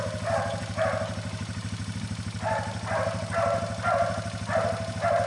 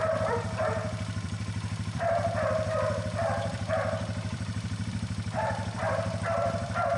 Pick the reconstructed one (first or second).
second